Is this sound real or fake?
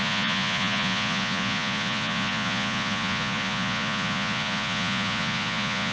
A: fake